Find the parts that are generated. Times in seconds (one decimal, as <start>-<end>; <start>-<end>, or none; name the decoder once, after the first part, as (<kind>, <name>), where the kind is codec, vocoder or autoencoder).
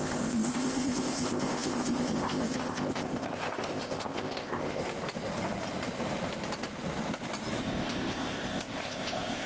0.0-4.8 (codec, ZipCodec); 7.6-9.5